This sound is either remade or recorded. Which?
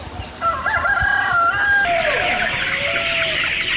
recorded